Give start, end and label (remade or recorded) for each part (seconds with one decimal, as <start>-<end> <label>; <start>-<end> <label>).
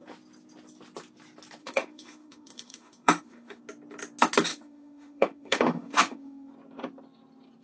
0.0-1.6 recorded; 1.6-3.6 remade; 3.6-4.5 recorded; 4.5-6.5 remade; 6.5-7.6 recorded